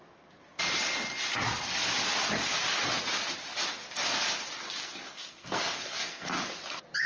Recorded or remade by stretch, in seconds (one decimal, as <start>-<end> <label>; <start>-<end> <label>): 0.0-4.8 recorded; 4.8-6.4 remade; 6.4-7.1 recorded